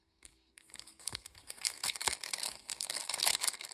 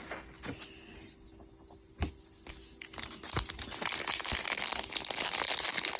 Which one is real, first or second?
second